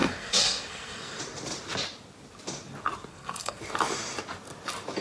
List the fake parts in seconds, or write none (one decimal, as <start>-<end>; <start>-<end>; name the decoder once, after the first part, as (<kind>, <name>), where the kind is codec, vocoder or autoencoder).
0.0-1.2 (codec, SNAC); 3.1-3.6